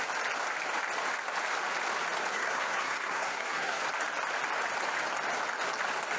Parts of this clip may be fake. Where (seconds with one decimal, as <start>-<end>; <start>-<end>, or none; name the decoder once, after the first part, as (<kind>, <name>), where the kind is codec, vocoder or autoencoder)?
2.3-3.8 (codec, SNAC)